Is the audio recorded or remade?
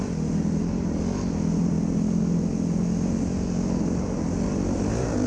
recorded